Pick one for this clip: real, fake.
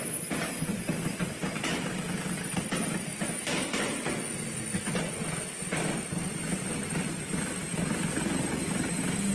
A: real